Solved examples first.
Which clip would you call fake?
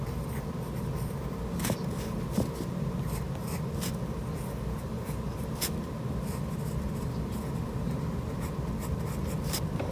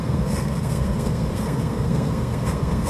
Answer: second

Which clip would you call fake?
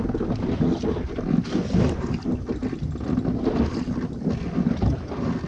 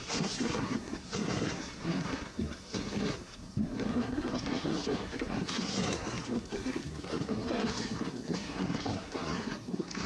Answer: second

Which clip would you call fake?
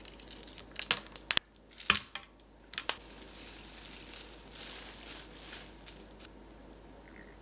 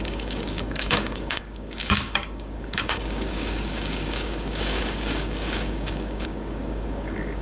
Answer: second